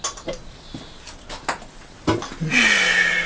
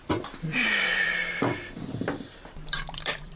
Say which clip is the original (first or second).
first